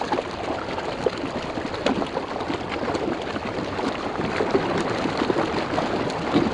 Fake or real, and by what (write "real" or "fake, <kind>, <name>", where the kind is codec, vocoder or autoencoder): real